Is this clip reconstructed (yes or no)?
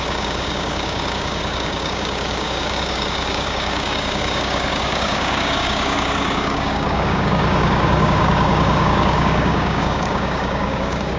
yes